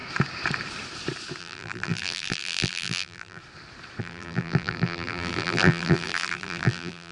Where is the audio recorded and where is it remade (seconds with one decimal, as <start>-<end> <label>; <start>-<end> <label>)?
0.0-1.4 recorded; 1.4-3.4 remade; 3.4-4.0 recorded; 4.0-7.1 remade